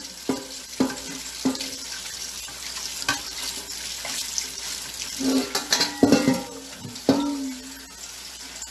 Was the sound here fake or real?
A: real